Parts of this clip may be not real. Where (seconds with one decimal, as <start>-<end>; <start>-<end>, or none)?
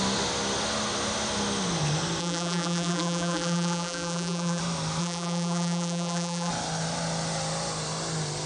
2.2-4.6; 5.0-6.5